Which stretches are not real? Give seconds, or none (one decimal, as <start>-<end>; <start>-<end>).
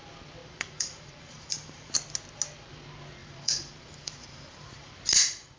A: 0.4-1.9; 3.2-5.0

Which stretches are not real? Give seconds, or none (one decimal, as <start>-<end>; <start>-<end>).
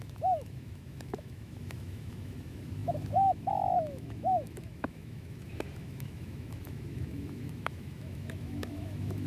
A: 0.0-9.3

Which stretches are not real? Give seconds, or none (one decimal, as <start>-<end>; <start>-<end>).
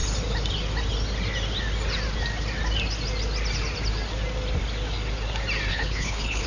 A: 5.7-6.5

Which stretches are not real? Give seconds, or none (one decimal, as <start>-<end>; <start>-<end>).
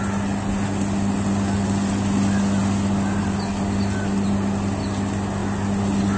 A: none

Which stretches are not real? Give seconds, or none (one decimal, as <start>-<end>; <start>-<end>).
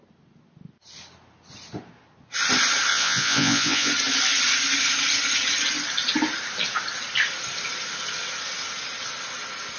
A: 2.9-3.9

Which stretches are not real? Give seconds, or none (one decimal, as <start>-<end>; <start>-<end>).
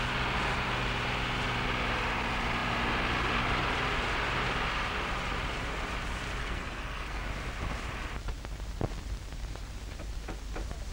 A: 6.4-7.2